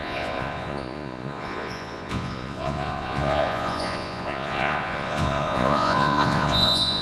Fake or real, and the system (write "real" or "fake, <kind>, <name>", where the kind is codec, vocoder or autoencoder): fake, vocoder, Vocos